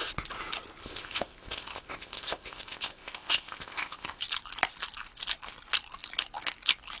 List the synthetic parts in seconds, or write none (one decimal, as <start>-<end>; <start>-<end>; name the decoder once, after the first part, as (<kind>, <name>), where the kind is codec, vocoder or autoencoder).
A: 0.8-4.2 (codec, ZipCodec)